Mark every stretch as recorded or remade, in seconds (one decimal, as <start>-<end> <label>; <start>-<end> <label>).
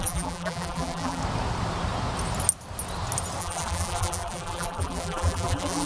0.0-1.2 remade; 1.2-3.4 recorded; 3.4-5.9 remade